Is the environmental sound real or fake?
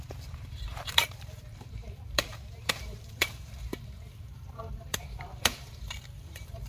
fake